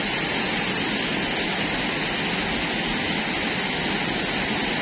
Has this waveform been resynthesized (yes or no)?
no